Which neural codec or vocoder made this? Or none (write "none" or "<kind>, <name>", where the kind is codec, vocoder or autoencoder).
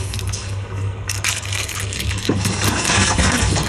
codec, SNAC